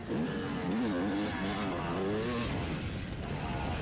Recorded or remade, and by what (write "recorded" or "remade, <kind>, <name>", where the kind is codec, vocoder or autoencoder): recorded